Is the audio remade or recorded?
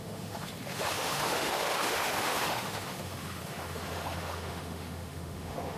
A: remade